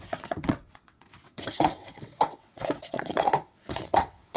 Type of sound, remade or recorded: remade